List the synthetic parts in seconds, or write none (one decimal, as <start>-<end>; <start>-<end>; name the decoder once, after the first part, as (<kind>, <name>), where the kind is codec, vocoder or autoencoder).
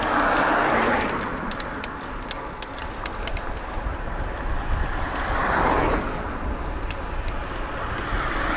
none